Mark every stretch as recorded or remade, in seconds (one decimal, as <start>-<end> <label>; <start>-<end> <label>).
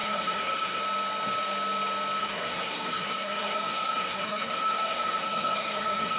0.0-0.8 remade; 0.8-2.2 recorded; 2.2-6.2 remade